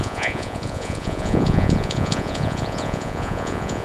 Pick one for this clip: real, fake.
fake